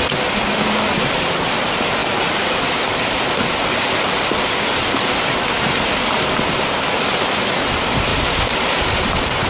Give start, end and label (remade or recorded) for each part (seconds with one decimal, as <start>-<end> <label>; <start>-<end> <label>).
0.0-9.5 recorded